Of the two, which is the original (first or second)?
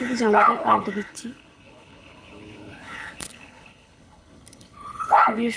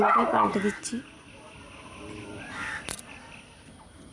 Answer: second